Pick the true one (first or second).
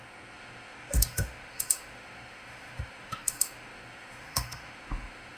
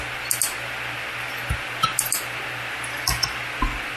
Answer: second